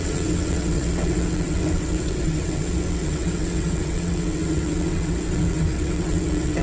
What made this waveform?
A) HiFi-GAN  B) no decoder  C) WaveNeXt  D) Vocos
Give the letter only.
C